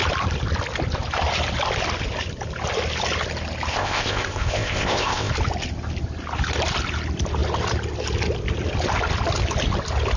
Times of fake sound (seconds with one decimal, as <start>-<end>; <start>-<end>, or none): 3.7-5.3